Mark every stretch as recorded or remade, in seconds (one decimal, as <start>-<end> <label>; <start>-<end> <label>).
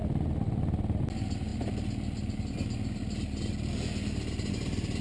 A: 0.0-5.0 recorded